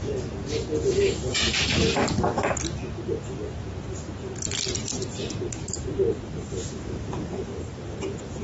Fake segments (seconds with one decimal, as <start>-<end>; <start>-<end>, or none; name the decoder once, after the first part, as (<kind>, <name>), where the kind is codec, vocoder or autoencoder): none